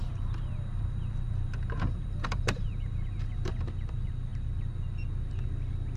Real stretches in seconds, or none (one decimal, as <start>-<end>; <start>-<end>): 3.6-6.0